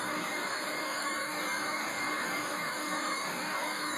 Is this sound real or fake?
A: fake